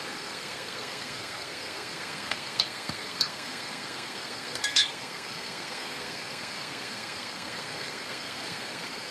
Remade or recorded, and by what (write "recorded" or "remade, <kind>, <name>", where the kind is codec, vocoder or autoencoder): remade, codec, SNAC